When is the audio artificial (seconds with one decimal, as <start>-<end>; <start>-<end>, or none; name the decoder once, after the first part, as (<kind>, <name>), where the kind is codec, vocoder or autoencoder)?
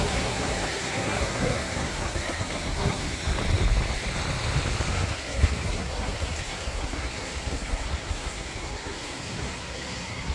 0.0-3.2 (codec, SNAC); 4.9-10.3